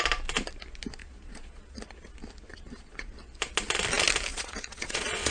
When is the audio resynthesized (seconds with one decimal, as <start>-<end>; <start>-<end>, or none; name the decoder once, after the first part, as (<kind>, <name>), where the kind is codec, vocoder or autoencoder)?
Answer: 1.0-2.1 (vocoder, Vocos); 2.5-3.1; 4.3-5.3